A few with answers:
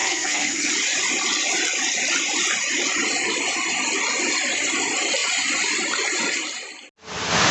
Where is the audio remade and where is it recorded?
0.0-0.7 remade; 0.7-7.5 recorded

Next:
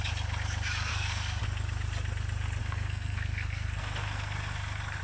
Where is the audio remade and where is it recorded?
0.0-0.9 recorded; 0.9-1.4 remade; 1.4-2.6 recorded; 2.6-5.0 remade

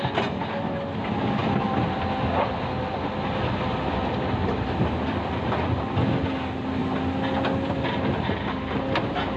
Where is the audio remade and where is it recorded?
0.0-9.4 recorded

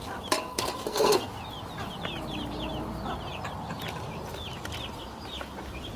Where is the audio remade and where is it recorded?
0.0-0.5 recorded; 0.5-1.3 remade; 1.3-6.0 recorded